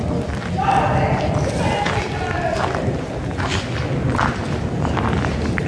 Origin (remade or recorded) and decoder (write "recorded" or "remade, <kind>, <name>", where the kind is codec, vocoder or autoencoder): recorded